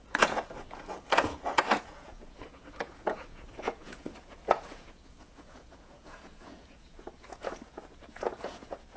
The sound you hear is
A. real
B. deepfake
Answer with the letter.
B